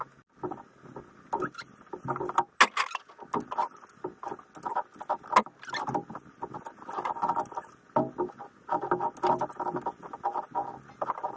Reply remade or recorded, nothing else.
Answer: recorded